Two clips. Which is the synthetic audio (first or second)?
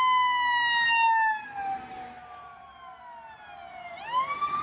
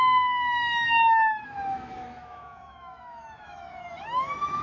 second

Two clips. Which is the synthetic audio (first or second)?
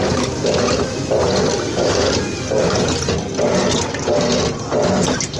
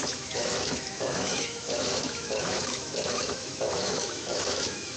second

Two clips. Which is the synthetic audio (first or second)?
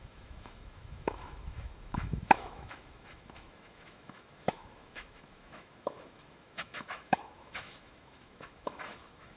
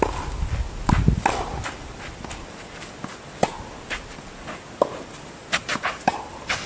first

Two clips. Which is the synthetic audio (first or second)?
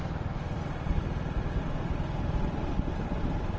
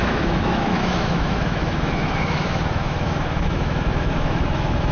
second